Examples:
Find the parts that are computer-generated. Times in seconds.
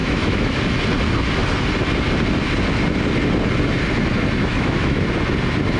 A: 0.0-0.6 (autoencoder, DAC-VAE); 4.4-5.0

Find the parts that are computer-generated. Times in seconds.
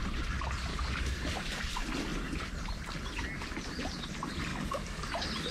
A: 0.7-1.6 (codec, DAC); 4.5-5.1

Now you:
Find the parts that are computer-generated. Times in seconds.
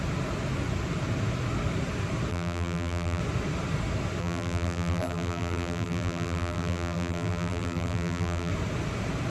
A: 2.3-3.2 (vocoder, BigVGAN v2); 4.2-8.5